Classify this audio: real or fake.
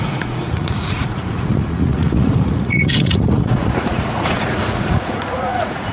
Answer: fake